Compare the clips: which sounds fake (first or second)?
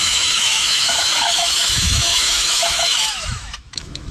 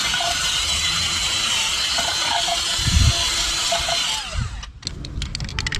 first